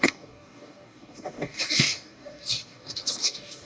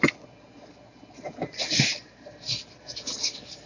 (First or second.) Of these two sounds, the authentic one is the second